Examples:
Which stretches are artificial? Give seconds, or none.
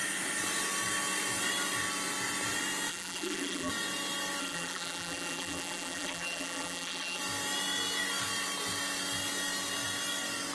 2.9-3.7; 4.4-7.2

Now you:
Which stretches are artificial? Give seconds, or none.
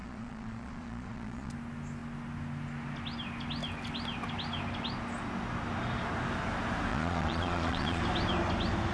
0.0-1.5; 6.9-8.0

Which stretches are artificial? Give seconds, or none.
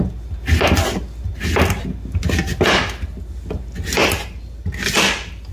none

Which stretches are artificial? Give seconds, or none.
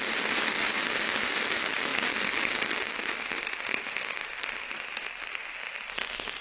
0.0-5.4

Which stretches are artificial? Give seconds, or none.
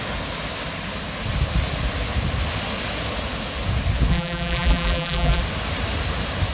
4.1-5.4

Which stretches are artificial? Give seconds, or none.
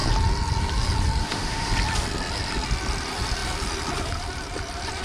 1.2-1.7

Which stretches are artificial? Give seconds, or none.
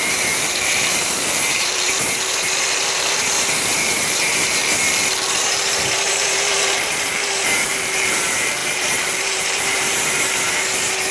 0.0-4.6; 5.4-11.1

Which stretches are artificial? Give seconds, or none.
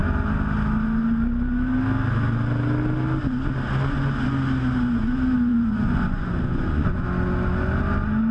5.5-7.0